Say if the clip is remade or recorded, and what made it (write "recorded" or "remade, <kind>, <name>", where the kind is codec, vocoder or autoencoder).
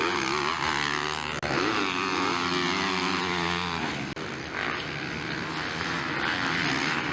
recorded